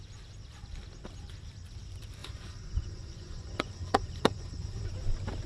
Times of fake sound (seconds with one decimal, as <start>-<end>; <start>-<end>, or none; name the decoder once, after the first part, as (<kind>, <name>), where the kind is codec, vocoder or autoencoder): 2.2-4.9 (vocoder, Vocos)